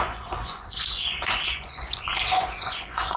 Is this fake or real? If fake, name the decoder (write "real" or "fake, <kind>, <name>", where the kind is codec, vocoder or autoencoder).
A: fake, vocoder, Vocos